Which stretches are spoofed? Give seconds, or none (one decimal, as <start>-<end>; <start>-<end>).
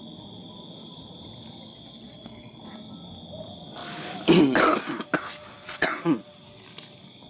1.7-2.6; 5.6-6.2